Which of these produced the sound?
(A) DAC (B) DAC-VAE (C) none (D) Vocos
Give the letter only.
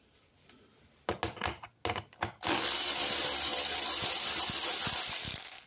C